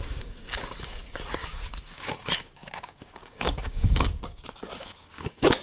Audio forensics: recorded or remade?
remade